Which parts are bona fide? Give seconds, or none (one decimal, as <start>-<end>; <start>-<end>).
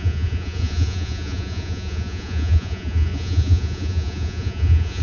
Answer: none